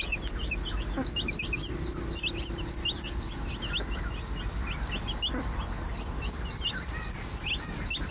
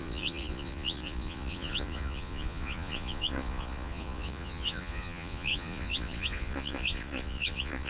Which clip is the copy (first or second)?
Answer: second